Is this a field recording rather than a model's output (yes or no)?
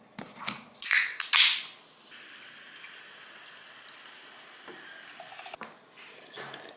yes